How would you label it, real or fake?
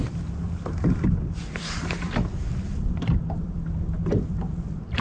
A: real